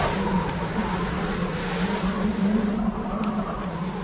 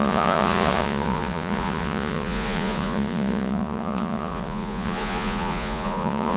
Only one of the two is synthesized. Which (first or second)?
second